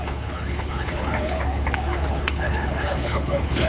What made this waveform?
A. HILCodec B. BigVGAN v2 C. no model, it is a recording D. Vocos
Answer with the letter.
A